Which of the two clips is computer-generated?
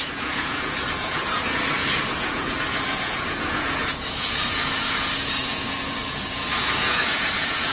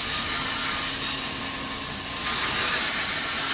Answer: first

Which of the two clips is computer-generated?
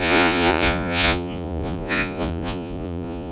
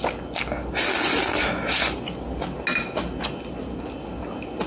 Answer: first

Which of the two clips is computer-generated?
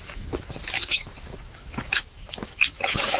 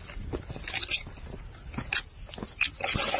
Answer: first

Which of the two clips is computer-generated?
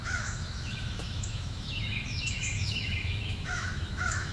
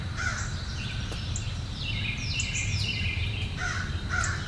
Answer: first